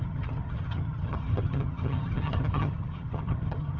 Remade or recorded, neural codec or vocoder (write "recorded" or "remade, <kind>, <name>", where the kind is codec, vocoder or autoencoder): remade, vocoder, HiFi-GAN